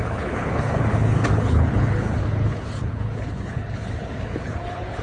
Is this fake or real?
fake